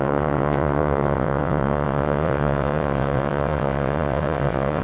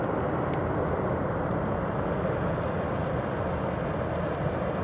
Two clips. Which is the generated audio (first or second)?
first